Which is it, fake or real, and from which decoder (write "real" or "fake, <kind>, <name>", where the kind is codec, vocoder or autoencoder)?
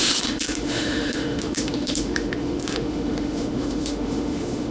fake, autoencoder, DAC-VAE